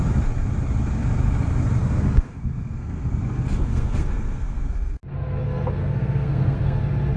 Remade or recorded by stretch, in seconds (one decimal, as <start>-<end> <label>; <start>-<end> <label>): 0.0-1.8 recorded; 1.8-5.0 remade; 5.0-5.8 recorded; 5.8-6.8 remade; 6.8-7.2 recorded